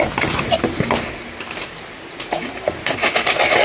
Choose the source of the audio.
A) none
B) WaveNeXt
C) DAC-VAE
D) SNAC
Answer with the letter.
A